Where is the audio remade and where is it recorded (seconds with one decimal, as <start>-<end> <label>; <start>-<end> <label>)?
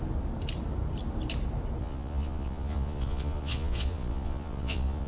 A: 0.0-1.8 recorded; 1.8-5.1 remade